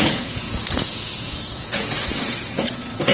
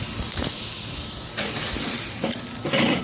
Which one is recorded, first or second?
second